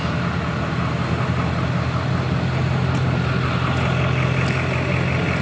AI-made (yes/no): no